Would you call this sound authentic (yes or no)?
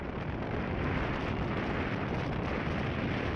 yes